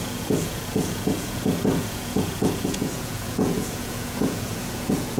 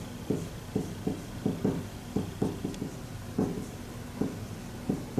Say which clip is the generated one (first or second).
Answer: first